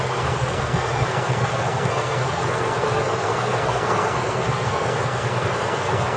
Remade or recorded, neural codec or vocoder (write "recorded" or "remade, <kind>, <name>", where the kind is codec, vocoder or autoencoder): remade, codec, SNAC